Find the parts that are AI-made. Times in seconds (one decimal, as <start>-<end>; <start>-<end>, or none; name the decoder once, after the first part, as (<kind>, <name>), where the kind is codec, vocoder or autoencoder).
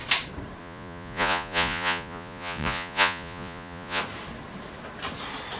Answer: 0.6-4.0 (vocoder, Vocos)